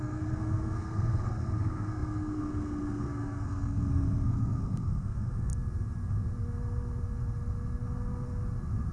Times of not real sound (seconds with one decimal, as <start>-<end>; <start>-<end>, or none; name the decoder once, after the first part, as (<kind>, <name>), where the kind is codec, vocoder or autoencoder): 0.0-5.5 (codec, SNAC)